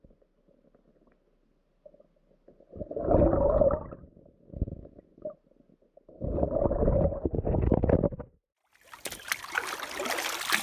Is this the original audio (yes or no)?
yes